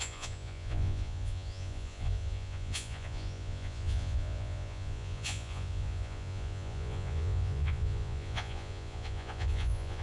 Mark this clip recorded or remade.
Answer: remade